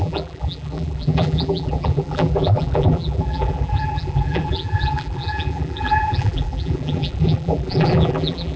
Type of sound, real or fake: fake